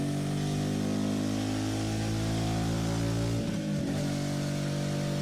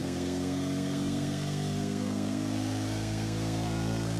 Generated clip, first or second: second